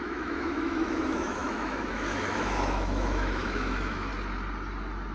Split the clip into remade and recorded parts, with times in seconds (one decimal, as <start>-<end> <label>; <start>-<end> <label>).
0.0-4.1 remade; 4.1-5.1 recorded